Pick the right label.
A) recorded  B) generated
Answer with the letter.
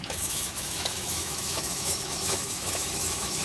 B